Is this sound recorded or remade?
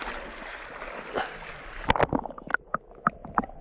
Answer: recorded